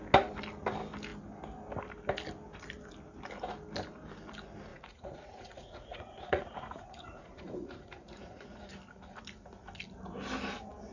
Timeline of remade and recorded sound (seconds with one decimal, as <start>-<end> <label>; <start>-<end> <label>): 0.0-4.7 recorded; 4.7-8.7 remade; 8.7-10.9 recorded